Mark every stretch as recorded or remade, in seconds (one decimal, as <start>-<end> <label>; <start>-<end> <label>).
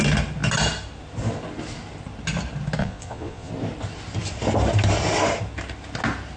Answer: 0.0-2.8 recorded; 2.8-3.5 remade; 3.5-6.4 recorded